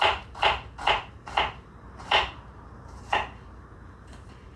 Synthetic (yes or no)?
yes